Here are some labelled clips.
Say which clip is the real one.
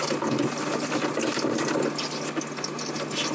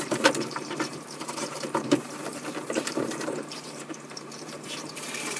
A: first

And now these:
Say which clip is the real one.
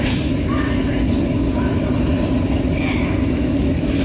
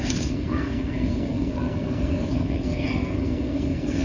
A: first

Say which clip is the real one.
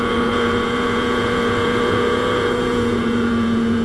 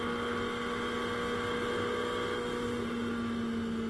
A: second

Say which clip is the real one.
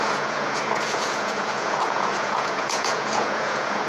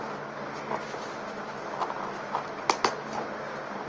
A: second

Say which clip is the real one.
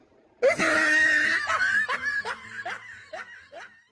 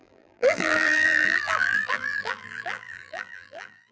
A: first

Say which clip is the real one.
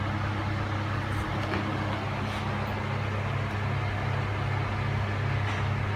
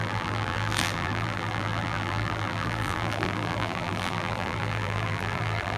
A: first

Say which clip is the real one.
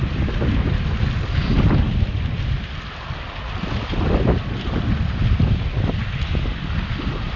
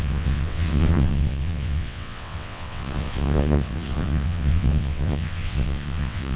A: first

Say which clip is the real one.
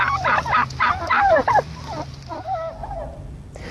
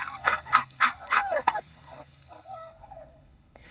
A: first